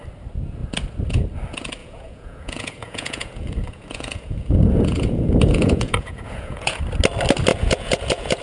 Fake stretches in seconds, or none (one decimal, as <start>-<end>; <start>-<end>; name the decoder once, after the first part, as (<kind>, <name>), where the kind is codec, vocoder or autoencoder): 1.8-6.8 (vocoder, Vocos); 7.5-8.4